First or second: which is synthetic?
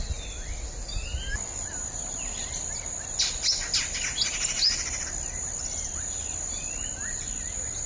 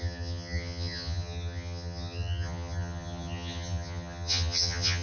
second